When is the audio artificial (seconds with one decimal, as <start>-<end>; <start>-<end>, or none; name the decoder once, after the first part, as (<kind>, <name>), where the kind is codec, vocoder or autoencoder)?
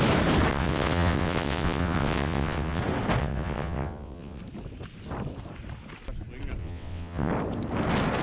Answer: 0.5-2.8 (vocoder, WaveNeXt); 3.2-4.4; 6.6-7.3